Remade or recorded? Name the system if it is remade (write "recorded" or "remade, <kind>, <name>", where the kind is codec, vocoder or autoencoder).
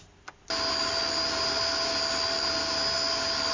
recorded